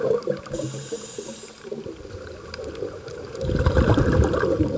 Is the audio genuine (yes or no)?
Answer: no